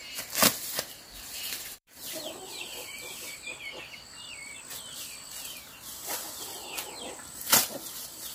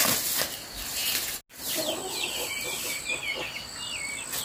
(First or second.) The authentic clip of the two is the second